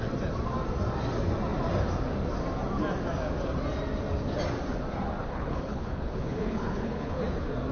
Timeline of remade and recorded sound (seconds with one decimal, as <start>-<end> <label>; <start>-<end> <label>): 0.0-5.2 recorded; 5.2-7.2 remade; 7.2-7.7 recorded